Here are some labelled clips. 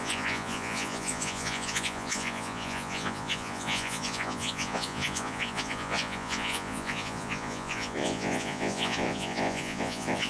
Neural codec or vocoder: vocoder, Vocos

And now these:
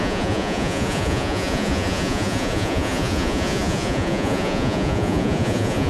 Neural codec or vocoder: vocoder, Vocos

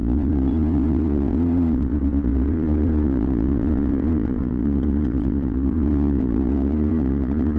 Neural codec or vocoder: vocoder, Vocos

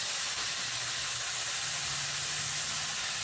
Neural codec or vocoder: none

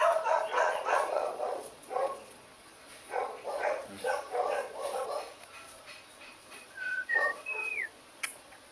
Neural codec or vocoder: vocoder, Vocos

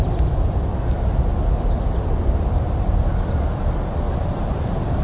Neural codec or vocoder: none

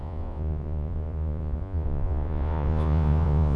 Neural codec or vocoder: vocoder, Vocos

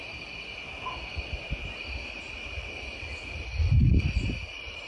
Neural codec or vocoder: none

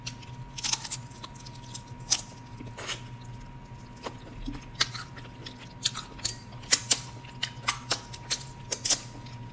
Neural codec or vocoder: none